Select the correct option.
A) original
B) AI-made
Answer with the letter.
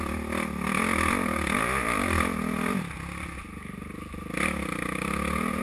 A